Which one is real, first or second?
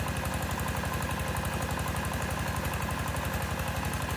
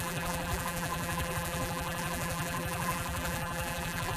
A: first